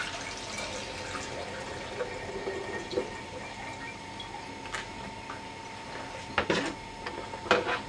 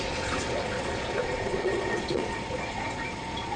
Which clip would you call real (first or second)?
first